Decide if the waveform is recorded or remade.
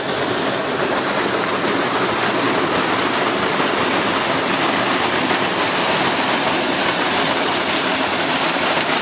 recorded